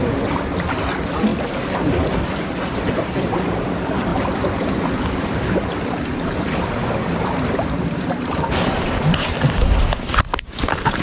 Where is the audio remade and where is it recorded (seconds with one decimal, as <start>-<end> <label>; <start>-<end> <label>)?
0.0-11.0 recorded